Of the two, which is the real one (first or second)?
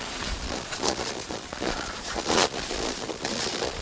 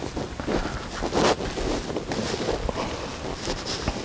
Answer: second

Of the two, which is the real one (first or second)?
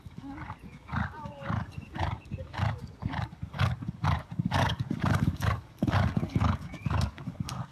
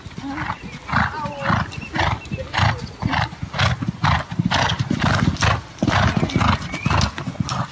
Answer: second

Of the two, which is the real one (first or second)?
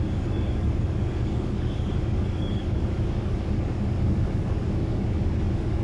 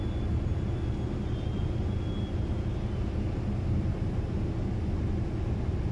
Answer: second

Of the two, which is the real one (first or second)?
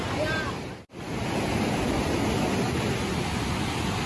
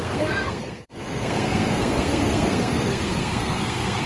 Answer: first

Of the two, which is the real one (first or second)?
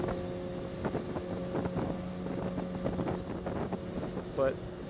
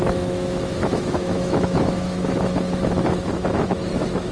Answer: first